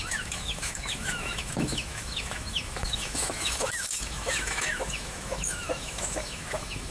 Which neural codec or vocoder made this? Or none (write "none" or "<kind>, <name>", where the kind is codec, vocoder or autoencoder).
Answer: autoencoder, DAC-VAE